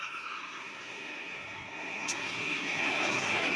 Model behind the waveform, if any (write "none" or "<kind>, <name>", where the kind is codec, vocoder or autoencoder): codec, SNAC